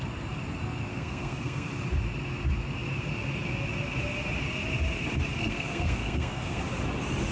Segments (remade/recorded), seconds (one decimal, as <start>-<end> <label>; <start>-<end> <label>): 0.0-0.9 recorded; 0.9-1.7 remade; 1.7-5.4 recorded; 5.4-6.6 remade; 6.6-7.3 recorded